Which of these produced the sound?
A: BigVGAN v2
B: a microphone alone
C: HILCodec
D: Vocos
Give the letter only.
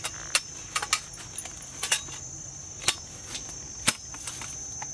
B